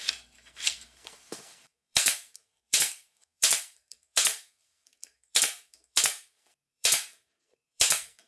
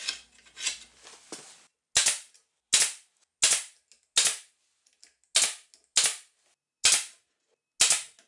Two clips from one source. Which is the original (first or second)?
second